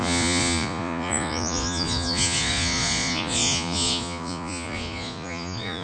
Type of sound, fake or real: fake